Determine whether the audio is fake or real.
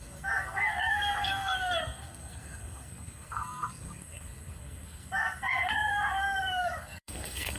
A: fake